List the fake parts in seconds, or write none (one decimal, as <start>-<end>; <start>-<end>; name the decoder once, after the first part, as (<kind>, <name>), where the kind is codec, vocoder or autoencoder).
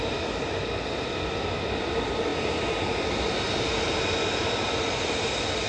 none